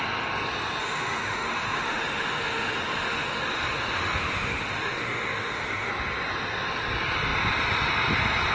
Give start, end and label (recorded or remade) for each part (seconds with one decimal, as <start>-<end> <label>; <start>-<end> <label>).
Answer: 0.0-0.8 recorded; 0.8-5.9 remade; 5.9-8.5 recorded